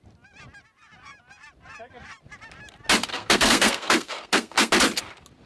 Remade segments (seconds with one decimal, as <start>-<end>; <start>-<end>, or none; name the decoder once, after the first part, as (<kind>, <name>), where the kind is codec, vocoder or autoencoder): 3.1-4.7 (codec, SNAC)